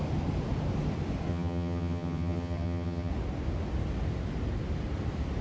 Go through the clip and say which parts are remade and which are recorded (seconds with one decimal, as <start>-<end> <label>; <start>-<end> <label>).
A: 0.0-1.3 recorded; 1.3-3.1 remade; 3.1-5.4 recorded